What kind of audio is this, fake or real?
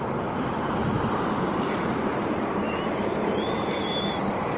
fake